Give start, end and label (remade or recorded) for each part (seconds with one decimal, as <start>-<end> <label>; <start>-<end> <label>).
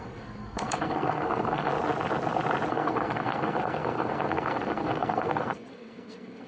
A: 0.0-1.7 remade; 1.7-2.7 recorded; 2.7-6.5 remade